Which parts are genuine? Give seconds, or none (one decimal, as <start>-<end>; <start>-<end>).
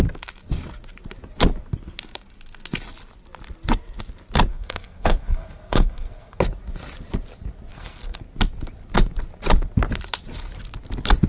0.0-4.5; 6.4-7.7; 8.2-11.3